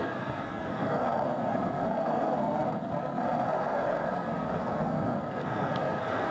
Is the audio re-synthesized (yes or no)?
yes